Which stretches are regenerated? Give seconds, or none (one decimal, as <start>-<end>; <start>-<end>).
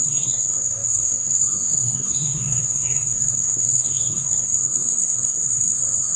0.0-6.2